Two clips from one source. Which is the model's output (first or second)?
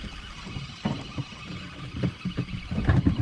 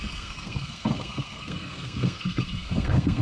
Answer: second